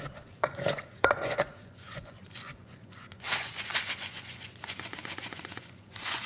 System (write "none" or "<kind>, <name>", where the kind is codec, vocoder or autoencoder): vocoder, Vocos